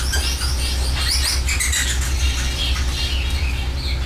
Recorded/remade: recorded